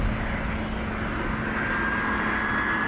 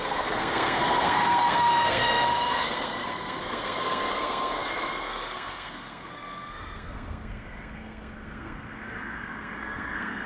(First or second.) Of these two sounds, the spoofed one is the second